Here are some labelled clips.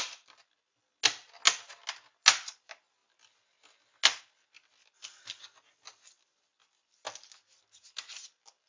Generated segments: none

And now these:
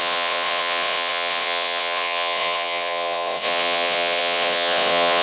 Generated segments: 0.0-5.2 (vocoder, WaveNeXt)

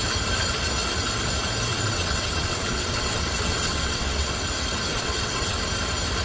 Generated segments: 1.7-4.4 (vocoder, WaveNeXt); 4.9-5.6

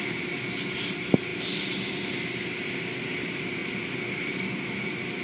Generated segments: none

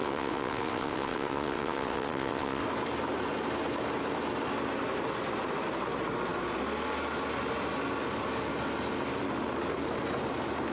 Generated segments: 0.0-2.6 (vocoder, WaveNeXt)